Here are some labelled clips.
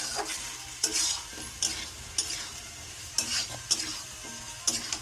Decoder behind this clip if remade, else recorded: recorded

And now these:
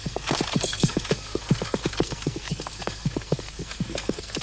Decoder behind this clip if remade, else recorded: remade, codec, SNAC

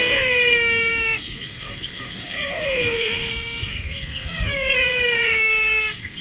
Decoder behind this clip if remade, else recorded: remade, codec, SNAC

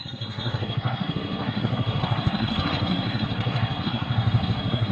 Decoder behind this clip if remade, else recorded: remade, codec, SNAC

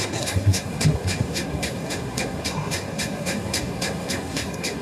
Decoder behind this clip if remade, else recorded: remade, codec, SNAC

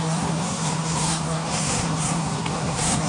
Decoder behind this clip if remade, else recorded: remade, codec, SNAC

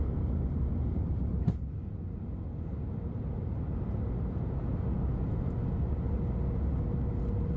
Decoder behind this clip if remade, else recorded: recorded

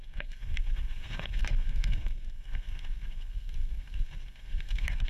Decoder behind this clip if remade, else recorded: remade, codec, SNAC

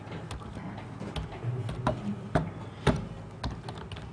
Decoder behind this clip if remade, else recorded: recorded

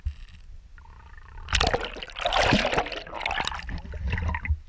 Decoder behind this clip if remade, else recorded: recorded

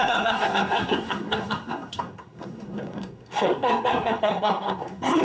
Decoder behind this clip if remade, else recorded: remade, codec, SNAC